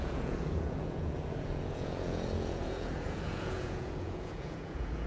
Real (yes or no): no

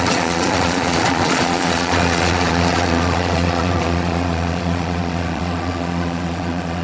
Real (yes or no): no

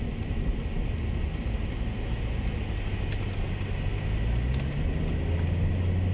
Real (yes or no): yes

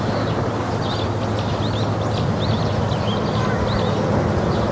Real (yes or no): yes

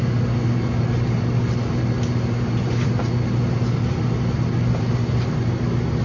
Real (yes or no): yes